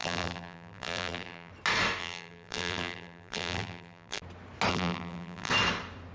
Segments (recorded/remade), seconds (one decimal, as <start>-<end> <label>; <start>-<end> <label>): 0.0-1.5 remade; 1.5-2.0 recorded; 2.0-4.2 remade; 4.2-4.7 recorded; 4.7-5.5 remade; 5.5-6.1 recorded